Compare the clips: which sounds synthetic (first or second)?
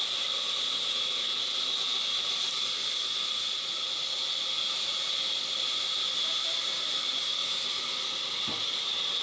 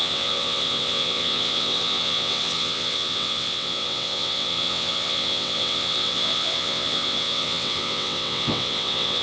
second